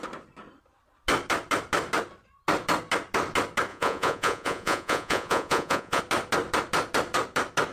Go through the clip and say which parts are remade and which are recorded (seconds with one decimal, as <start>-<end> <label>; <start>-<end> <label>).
0.0-3.7 recorded; 3.7-6.0 remade; 6.0-7.7 recorded